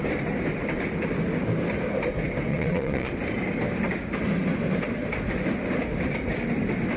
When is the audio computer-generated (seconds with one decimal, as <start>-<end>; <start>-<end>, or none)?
2.5-3.1

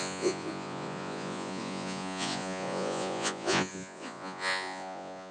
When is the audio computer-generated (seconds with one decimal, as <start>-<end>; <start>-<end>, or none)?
0.0-5.3

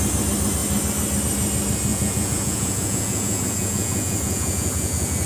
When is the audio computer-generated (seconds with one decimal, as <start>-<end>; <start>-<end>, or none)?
1.9-5.3

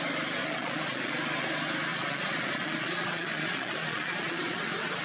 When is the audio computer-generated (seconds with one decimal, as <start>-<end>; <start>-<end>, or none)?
0.4-1.1; 1.9-4.6

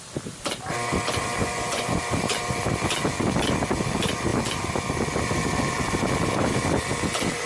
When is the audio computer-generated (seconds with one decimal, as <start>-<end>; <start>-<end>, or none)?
1.4-2.0